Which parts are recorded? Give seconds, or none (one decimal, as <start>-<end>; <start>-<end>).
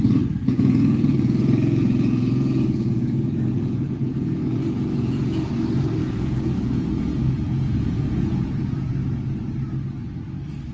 0.0-0.4; 5.5-6.0; 8.9-10.7